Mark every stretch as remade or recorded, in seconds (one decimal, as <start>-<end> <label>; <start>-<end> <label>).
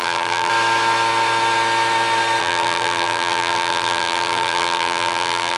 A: 0.0-0.5 remade; 0.5-2.4 recorded; 2.4-5.6 remade